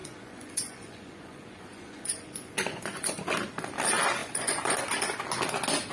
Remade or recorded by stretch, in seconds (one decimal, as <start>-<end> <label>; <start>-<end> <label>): 0.0-3.2 remade; 3.2-4.2 recorded; 4.2-4.8 remade; 4.8-5.9 recorded